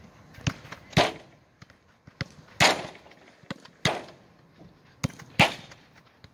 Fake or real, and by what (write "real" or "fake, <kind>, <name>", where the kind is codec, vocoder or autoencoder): real